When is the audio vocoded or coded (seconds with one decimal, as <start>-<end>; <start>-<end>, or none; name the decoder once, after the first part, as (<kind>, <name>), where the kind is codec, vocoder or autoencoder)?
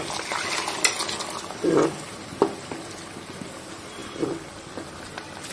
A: none